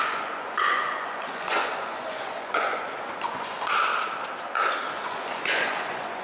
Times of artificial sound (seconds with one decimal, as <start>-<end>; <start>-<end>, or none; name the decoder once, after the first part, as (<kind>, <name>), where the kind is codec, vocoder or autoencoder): 0.0-3.9 (vocoder, Vocos); 4.9-6.2